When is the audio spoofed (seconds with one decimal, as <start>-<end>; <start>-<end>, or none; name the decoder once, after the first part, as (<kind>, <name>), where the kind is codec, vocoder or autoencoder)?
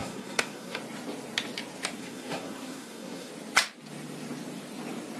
0.0-0.8 (codec, SNAC); 2.0-3.3